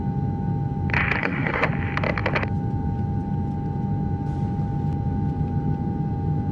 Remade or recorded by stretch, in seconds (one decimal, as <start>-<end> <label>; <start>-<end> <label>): 0.0-1.2 recorded; 1.2-1.7 remade; 1.7-6.5 recorded